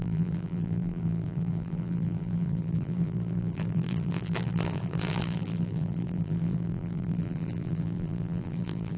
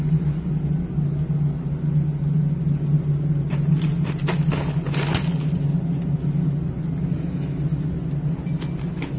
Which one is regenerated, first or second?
first